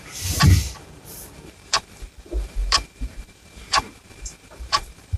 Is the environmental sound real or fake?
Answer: fake